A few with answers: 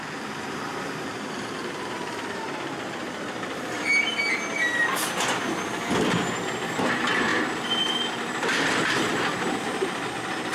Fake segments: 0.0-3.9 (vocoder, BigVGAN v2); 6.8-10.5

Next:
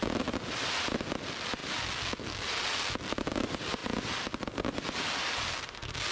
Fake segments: none

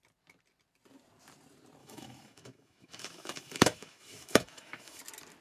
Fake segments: 1.8-5.0 (autoencoder, DAC-VAE)

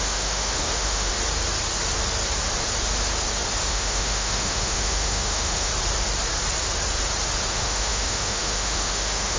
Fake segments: 0.0-1.1 (autoencoder, DAC-VAE); 3.7-5.7; 7.5-9.4

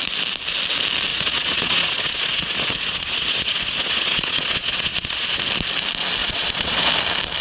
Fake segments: 1.1-5.4 (vocoder, Vocos); 6.2-6.9

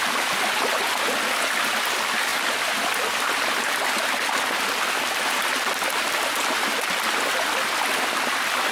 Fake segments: none

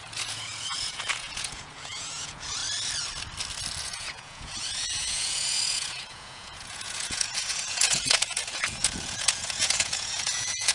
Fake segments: 0.0-2.6 (vocoder, Vocos); 3.8-10.7

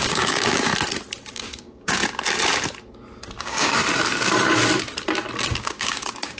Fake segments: 0.0-0.7 (codec, DAC); 1.3-2.0; 3.4-3.8; 5.4-6.4